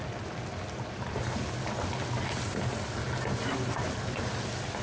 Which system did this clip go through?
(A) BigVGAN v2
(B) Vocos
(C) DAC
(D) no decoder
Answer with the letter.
D